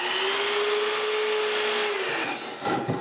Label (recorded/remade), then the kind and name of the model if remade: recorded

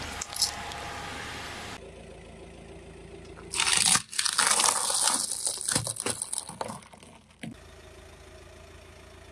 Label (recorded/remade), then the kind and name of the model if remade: recorded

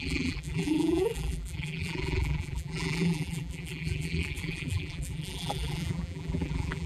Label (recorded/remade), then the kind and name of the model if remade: remade, vocoder, BigVGAN v2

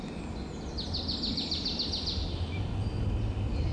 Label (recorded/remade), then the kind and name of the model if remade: recorded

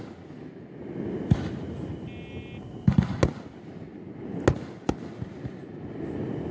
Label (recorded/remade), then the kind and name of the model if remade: recorded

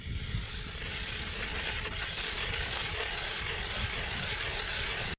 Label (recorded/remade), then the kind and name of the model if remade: recorded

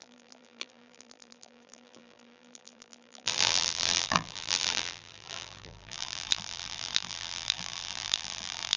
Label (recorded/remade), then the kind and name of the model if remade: remade, vocoder, BigVGAN v2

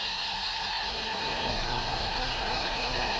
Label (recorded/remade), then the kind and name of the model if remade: remade, codec, SNAC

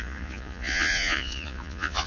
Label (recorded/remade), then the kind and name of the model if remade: remade, vocoder, Vocos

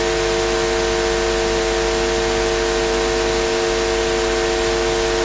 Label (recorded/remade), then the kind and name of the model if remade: recorded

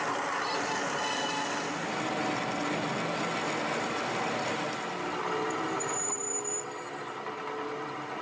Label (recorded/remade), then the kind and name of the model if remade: recorded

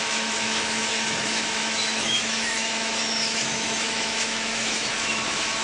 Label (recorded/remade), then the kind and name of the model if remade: remade, autoencoder, DAC-VAE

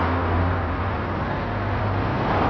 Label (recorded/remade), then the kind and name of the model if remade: recorded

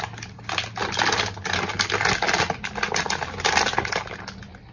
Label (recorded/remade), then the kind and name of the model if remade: recorded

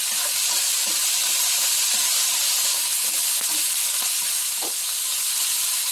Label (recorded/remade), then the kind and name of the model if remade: recorded